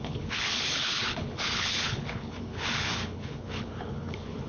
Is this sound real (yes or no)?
no